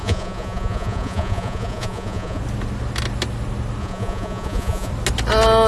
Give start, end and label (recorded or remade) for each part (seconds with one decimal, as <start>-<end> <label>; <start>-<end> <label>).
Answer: 0.0-2.4 remade; 2.4-3.8 recorded; 3.8-4.9 remade; 4.9-5.7 recorded